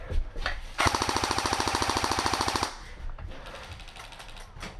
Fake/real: real